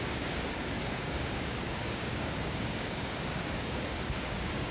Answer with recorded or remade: remade